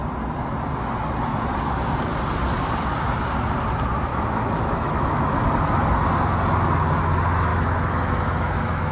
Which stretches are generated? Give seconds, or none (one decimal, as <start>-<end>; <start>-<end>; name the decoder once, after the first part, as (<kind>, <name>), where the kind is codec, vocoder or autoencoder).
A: 4.1-5.4 (autoencoder, DAC-VAE); 7.5-8.9